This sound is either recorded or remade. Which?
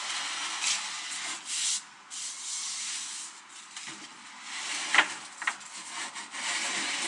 recorded